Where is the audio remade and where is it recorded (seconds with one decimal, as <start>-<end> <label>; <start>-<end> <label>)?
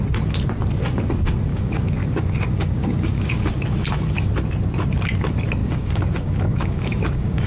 0.0-1.5 recorded; 1.5-3.5 remade; 3.5-5.6 recorded; 5.6-7.5 remade